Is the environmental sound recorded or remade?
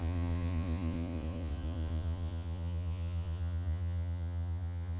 remade